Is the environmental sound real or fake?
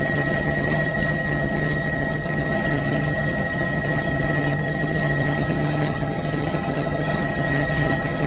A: fake